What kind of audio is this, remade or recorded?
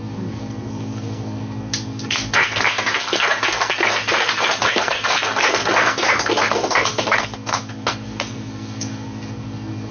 remade